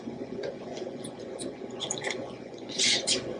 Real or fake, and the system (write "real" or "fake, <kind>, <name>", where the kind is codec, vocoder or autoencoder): fake, vocoder, Vocos